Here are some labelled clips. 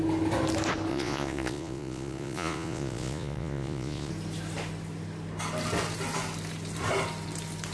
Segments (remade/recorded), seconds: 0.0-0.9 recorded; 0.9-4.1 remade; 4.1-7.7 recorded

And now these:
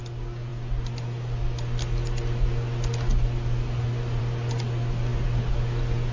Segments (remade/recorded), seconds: 0.0-6.1 recorded

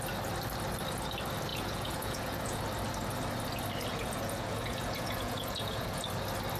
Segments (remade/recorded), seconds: 0.0-1.5 recorded; 1.5-2.6 remade; 2.6-3.9 recorded; 3.9-6.0 remade; 6.0-6.6 recorded

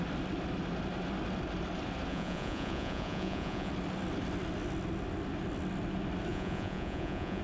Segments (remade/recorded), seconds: 0.0-2.1 recorded; 2.1-3.7 remade; 3.7-6.3 recorded; 6.3-7.4 remade